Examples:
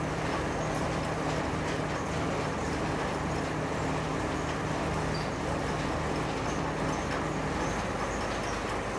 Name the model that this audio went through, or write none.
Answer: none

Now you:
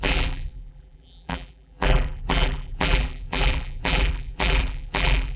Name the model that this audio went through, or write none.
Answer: vocoder, BigVGAN v2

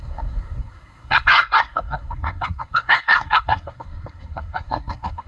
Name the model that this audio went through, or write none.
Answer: codec, SNAC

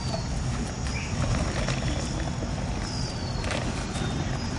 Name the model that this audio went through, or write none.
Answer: none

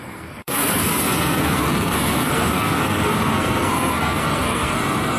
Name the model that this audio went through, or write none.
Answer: codec, SNAC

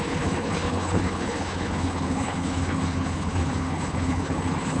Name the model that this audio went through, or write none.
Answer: codec, HILCodec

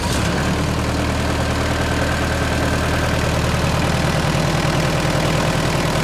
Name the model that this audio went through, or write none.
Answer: none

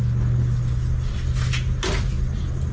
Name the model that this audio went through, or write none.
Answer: none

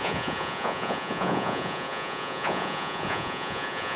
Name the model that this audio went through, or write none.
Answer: vocoder, Vocos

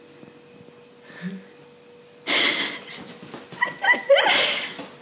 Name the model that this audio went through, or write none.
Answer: none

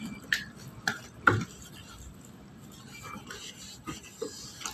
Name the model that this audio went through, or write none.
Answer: none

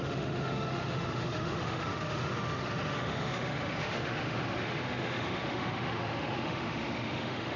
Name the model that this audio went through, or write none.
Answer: autoencoder, DAC-VAE